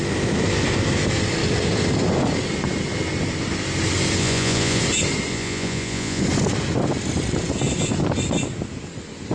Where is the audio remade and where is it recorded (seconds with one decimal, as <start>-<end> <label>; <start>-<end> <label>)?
0.0-4.2 recorded; 4.2-4.8 remade; 4.8-5.3 recorded; 5.3-6.2 remade; 6.2-9.3 recorded